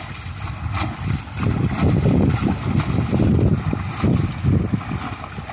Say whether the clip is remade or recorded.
recorded